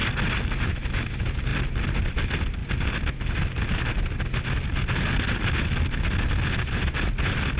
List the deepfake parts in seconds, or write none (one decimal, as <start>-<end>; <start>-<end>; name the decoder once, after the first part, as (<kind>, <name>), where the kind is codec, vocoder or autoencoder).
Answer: none